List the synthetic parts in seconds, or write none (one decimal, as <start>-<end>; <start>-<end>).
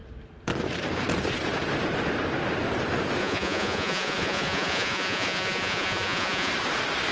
3.2-6.5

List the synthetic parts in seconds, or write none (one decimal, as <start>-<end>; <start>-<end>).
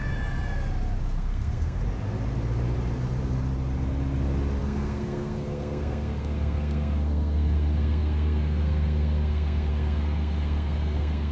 1.0-1.8; 4.6-11.3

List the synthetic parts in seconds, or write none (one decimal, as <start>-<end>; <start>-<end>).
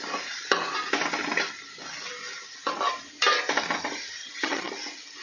4.2-4.7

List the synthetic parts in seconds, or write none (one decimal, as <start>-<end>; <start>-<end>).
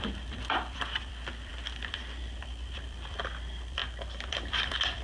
0.0-3.8; 4.3-5.0